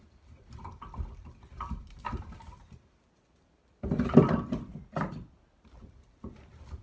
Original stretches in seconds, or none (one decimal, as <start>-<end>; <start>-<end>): 4.7-5.8